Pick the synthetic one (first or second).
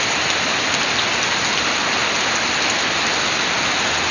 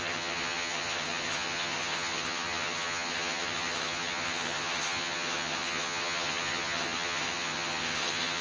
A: second